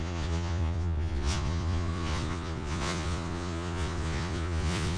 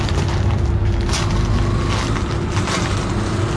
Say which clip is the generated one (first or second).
first